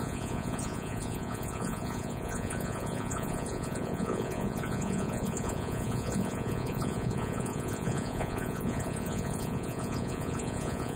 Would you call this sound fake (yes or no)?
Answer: yes